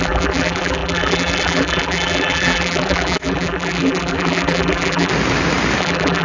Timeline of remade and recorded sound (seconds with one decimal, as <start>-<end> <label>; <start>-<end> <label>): 0.0-5.1 remade; 5.1-5.8 recorded; 5.8-6.2 remade